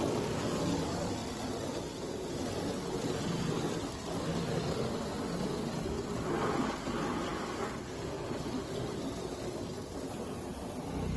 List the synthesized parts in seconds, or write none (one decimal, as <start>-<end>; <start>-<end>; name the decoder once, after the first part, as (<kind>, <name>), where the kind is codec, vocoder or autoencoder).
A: none